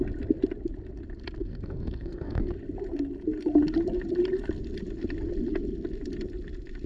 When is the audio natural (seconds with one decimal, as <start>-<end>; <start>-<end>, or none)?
0.0-1.4; 2.4-6.9